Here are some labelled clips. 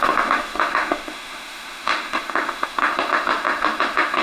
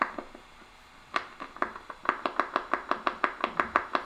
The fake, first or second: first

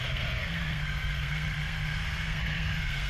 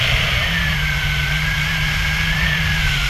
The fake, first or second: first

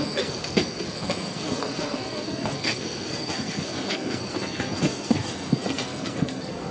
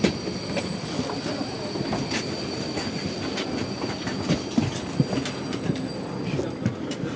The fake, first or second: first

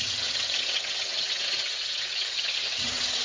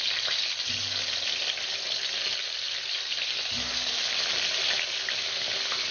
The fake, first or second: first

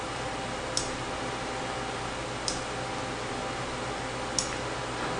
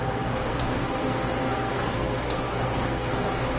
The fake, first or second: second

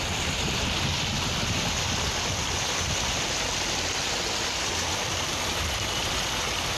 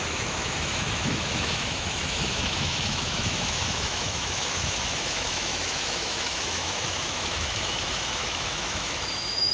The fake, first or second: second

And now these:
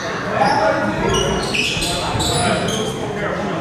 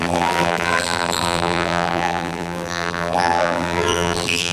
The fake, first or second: second